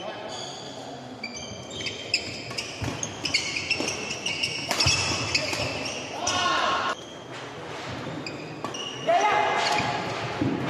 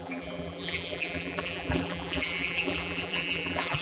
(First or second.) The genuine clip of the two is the first